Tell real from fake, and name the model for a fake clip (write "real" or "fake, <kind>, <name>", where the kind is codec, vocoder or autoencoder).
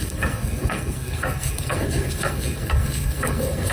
fake, codec, SNAC